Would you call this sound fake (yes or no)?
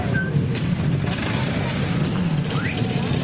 no